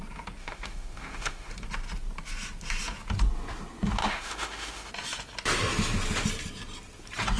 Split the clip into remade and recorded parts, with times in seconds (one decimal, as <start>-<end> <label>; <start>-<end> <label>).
0.0-0.4 recorded; 0.4-1.5 remade; 1.5-4.0 recorded; 4.0-4.9 remade; 4.9-7.4 recorded